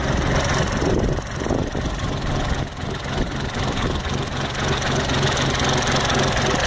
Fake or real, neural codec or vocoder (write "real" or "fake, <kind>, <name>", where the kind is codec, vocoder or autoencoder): real